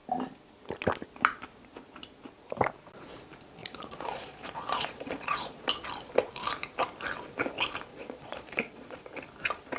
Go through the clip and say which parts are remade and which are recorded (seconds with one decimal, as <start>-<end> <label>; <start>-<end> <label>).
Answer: 0.0-3.6 recorded; 3.6-5.7 remade; 5.7-7.9 recorded; 7.9-9.0 remade; 9.0-9.8 recorded

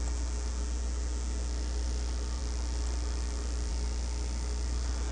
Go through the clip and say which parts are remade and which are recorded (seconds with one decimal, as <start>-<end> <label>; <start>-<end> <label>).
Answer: 0.0-5.1 recorded

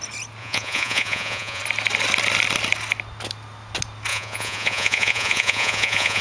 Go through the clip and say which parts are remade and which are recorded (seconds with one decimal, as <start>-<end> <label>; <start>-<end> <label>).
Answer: 0.0-0.4 recorded; 0.4-1.6 remade; 1.6-4.1 recorded; 4.1-6.2 remade